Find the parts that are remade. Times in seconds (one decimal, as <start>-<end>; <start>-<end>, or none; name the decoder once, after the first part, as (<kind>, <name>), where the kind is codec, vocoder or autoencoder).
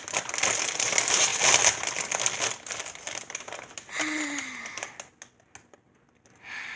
none